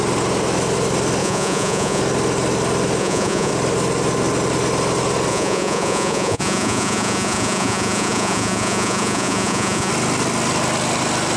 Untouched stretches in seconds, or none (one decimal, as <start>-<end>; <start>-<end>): 0.0-1.2; 2.0-3.0; 3.5-5.3; 9.9-11.4